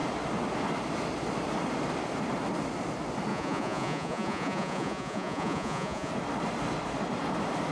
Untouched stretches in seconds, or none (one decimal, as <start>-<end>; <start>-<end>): 0.0-3.3; 6.1-7.7